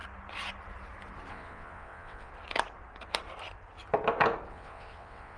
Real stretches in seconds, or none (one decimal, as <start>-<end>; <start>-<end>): 0.0-1.3; 2.3-4.5